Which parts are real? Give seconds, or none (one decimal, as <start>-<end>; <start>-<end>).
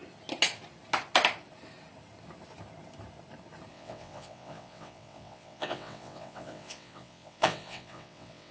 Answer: 0.0-3.7